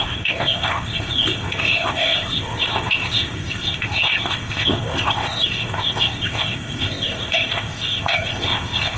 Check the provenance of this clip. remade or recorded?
remade